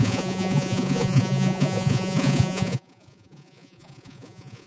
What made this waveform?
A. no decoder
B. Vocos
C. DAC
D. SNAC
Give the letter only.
B